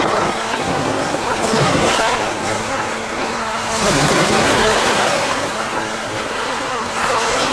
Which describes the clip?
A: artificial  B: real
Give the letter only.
A